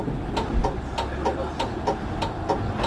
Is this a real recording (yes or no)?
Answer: yes